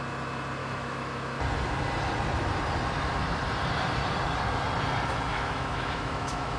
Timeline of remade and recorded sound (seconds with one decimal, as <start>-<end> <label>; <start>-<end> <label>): 0.0-0.6 recorded; 0.6-1.4 remade; 1.4-5.3 recorded; 5.3-6.6 remade